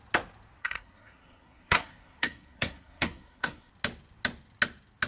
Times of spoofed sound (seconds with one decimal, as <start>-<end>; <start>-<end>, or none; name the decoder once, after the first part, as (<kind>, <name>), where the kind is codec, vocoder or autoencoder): 0.6-3.7 (codec, SNAC)

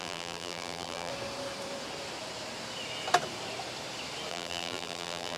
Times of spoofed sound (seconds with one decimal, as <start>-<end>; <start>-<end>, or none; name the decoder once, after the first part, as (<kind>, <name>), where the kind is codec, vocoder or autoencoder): 0.0-1.1 (vocoder, BigVGAN v2); 4.3-5.4

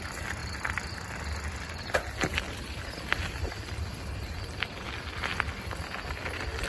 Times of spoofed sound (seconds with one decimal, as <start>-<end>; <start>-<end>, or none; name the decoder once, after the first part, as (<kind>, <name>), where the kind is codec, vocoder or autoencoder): none

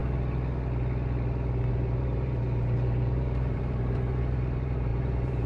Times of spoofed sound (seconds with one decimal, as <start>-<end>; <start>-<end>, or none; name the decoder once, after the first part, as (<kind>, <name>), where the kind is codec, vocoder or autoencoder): 1.7-5.5 (vocoder, BigVGAN v2)

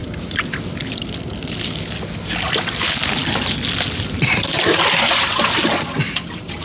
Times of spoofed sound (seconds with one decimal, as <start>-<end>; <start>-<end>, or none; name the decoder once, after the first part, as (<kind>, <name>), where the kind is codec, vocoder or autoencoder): none